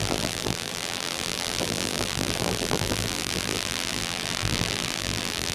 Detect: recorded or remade remade